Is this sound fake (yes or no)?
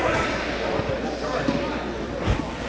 no